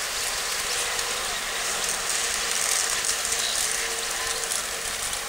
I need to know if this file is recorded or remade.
recorded